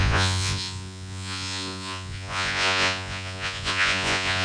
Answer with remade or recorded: remade